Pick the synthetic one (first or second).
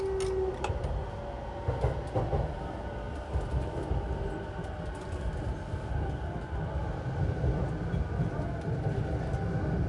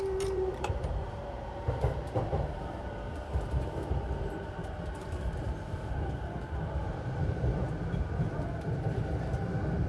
second